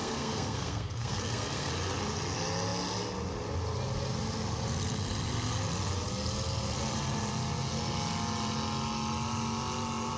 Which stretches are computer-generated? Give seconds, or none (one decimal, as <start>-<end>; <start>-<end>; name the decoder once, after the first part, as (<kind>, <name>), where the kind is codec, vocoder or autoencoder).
0.0-1.7 (codec, SNAC)

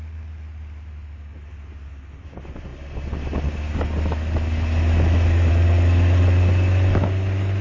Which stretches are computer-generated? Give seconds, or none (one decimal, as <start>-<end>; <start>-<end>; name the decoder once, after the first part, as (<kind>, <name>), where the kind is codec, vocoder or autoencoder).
none

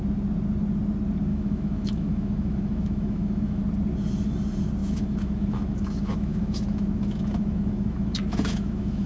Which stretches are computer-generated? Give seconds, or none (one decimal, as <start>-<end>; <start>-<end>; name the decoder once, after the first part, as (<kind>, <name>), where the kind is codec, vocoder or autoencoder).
1.3-3.6 (autoencoder, DAC-VAE); 4.8-9.1

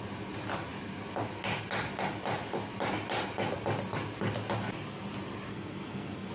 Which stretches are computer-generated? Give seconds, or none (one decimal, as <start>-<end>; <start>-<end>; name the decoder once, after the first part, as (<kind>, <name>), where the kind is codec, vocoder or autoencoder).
5.5-6.3 (codec, SNAC)

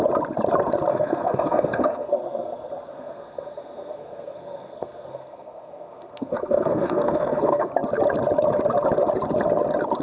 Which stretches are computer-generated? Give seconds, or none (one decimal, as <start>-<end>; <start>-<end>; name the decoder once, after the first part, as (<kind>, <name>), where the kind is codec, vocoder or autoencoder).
0.9-2.1 (codec, SNAC); 2.9-7.7